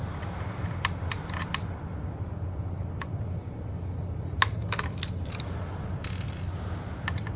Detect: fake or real real